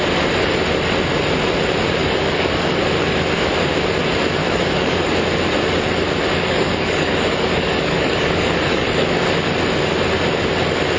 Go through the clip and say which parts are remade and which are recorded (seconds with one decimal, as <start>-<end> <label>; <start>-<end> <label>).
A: 0.0-2.0 recorded; 2.0-2.8 remade; 2.8-4.4 recorded; 4.4-5.1 remade; 5.1-6.3 recorded; 6.3-9.2 remade; 9.2-11.0 recorded